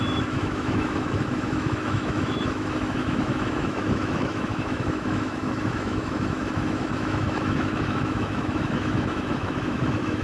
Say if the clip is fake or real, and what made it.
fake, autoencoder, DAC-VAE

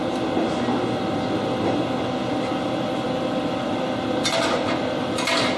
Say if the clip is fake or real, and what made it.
real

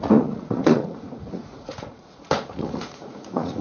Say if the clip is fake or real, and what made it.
fake, vocoder, Vocos